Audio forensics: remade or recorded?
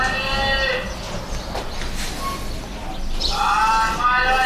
recorded